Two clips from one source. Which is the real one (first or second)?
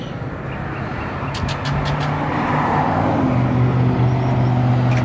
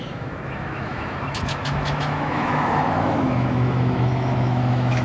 first